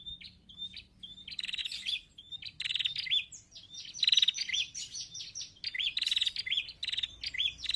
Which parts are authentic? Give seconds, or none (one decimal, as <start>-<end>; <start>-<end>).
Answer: 0.0-7.8